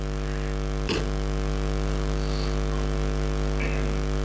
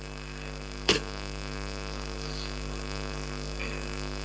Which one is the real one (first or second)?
first